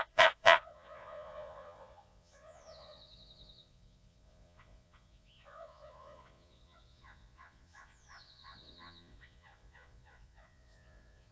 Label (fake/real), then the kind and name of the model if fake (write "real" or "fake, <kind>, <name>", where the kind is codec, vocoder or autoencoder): fake, vocoder, Vocos